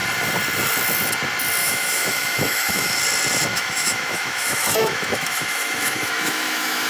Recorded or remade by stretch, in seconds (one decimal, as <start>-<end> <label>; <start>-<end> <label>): 0.0-1.6 recorded; 1.6-3.0 remade; 3.0-3.5 recorded; 3.5-6.9 remade